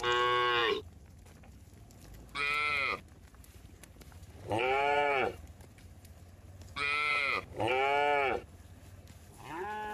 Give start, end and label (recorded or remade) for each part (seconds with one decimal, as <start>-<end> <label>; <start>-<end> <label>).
0.0-3.3 recorded; 3.3-6.2 remade; 6.2-7.1 recorded; 7.1-7.7 remade; 7.7-9.9 recorded